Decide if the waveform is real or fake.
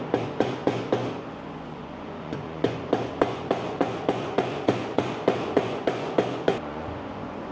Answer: fake